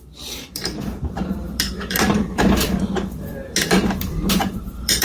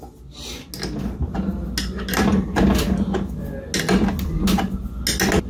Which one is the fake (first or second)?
first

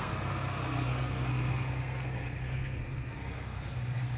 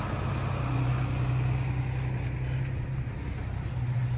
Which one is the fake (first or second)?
first